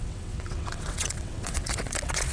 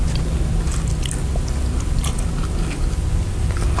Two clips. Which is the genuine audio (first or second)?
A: second